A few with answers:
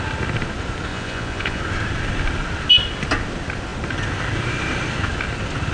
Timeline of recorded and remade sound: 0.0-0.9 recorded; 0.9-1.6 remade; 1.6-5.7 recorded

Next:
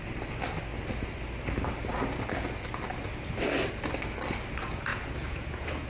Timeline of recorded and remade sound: 0.0-4.9 recorded; 4.9-5.9 remade

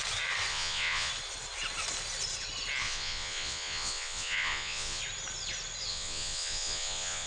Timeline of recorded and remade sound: 0.0-0.5 recorded; 0.5-1.1 remade; 1.1-2.8 recorded; 2.8-5.0 remade; 5.0-5.9 recorded; 5.9-7.3 remade

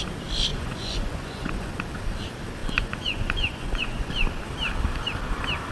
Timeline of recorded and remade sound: 0.0-0.5 recorded; 0.5-1.7 remade; 1.7-2.6 recorded; 2.6-4.1 remade; 4.1-5.7 recorded

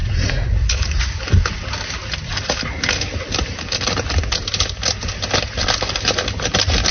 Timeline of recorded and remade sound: 0.0-1.2 remade; 1.2-6.9 recorded

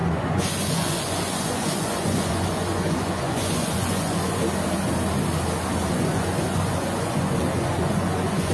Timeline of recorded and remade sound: 0.0-4.4 remade; 4.4-5.9 recorded; 5.9-8.5 remade

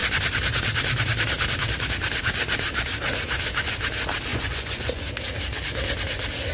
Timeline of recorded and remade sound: 0.0-4.3 recorded; 4.3-5.1 remade; 5.1-6.5 recorded

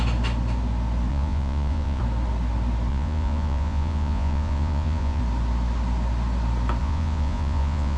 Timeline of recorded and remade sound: 0.0-1.1 recorded; 1.1-2.0 remade; 2.0-2.9 recorded; 2.9-5.2 remade; 5.2-6.8 recorded; 6.8-8.0 remade